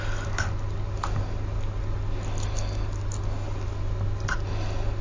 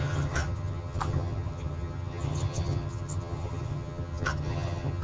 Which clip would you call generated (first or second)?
second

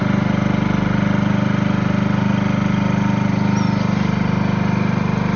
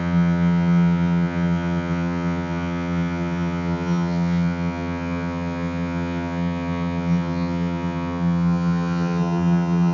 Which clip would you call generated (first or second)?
second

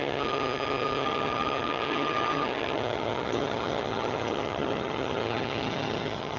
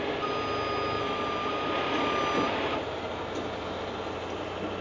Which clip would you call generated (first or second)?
first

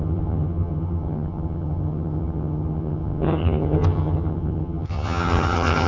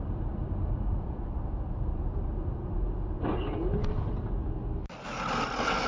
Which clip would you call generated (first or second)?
first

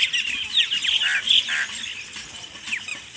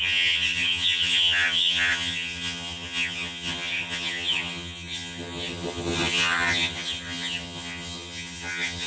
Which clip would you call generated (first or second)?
second